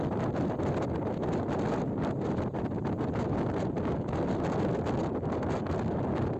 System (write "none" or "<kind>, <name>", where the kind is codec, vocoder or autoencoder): none